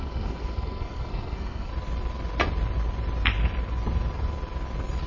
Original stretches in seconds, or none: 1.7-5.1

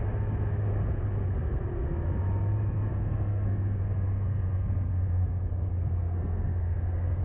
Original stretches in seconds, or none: 0.0-2.9

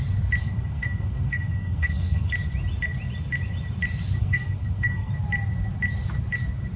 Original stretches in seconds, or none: 0.0-0.4; 2.3-4.2; 5.1-6.8

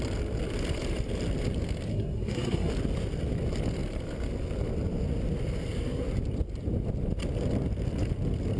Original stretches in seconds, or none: 0.0-1.9; 2.7-8.6